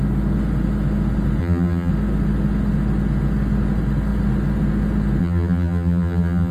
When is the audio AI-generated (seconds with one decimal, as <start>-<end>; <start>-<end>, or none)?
1.4-1.9; 5.2-6.5

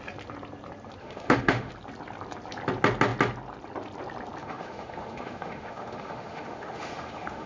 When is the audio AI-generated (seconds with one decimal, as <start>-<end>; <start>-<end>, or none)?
1.0-1.7; 4.4-7.5